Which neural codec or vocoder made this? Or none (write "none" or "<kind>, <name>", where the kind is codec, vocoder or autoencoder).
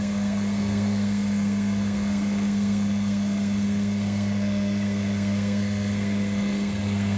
codec, SNAC